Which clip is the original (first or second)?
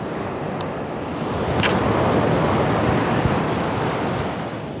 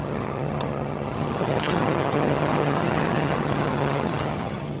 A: first